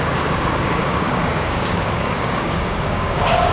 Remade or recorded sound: remade